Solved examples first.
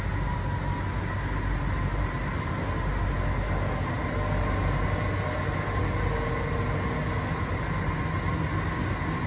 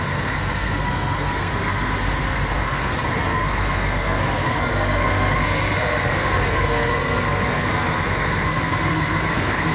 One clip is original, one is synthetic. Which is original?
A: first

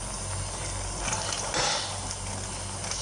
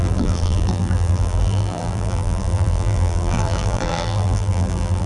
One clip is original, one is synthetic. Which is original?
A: first